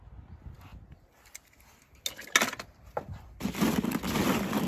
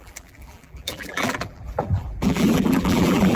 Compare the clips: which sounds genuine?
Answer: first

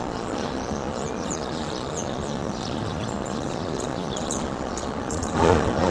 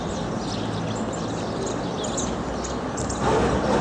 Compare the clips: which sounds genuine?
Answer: second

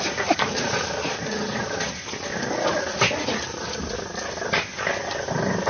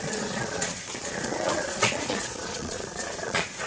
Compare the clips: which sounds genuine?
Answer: first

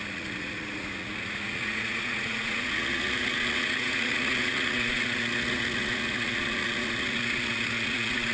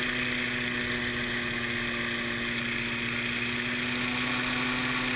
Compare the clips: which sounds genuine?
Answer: second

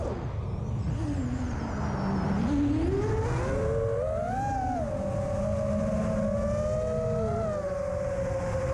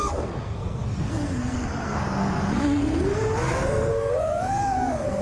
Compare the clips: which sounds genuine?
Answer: first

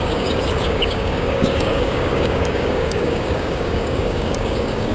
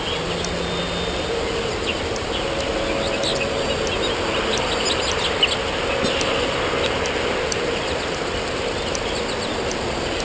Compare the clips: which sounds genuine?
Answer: second